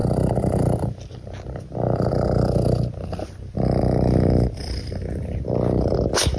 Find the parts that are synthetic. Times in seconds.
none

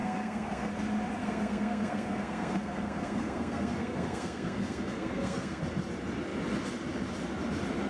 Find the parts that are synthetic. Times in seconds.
0.0-0.7; 1.2-5.6

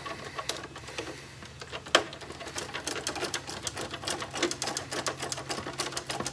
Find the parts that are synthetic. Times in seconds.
none

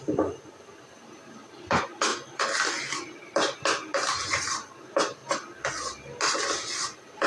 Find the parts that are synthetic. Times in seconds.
0.0-2.1; 2.8-5.2; 6.8-7.3

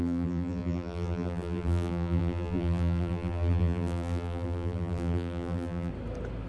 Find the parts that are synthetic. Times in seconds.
0.0-5.9

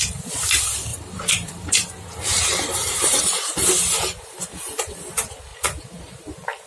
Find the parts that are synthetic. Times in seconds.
0.9-4.9; 5.5-6.7

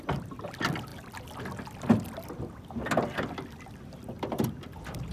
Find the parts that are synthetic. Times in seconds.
none